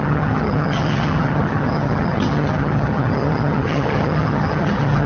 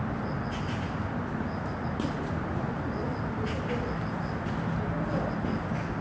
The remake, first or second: first